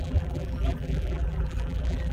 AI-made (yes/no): yes